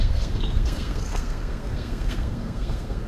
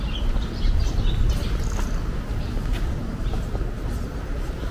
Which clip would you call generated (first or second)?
first